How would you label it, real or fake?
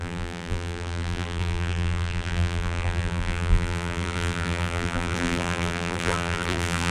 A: fake